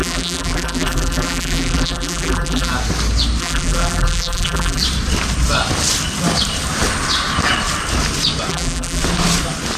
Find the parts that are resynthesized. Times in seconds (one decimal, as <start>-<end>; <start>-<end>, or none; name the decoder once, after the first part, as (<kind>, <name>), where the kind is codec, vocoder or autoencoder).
0.0-2.7 (vocoder, BigVGAN v2); 3.4-4.8; 8.5-9.0